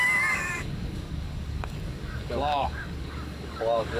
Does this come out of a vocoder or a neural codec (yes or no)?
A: yes